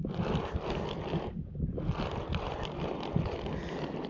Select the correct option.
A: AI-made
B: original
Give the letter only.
B